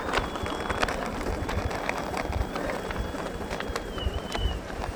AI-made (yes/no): yes